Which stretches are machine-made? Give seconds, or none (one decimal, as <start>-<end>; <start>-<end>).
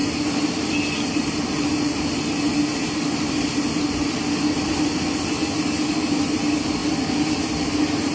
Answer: none